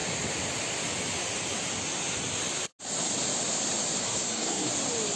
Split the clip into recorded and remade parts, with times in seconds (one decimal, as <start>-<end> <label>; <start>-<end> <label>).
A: 0.0-4.0 recorded; 4.0-4.7 remade; 4.7-5.2 recorded